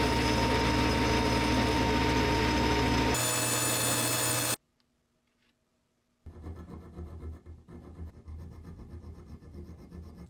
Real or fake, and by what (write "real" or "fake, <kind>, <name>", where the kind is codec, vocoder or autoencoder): real